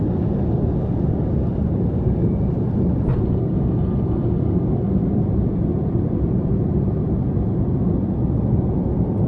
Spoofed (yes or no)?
yes